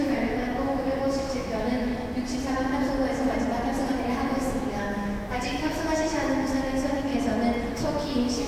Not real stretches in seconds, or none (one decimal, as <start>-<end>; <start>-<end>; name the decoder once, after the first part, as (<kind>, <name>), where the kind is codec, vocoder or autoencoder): 0.0-1.9 (autoencoder, DAC-VAE); 4.0-7.1; 7.7-8.5